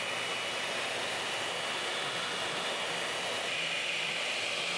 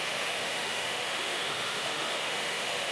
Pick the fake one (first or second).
second